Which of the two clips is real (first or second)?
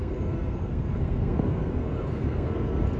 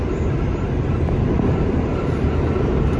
second